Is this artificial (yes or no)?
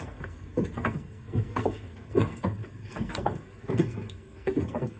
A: yes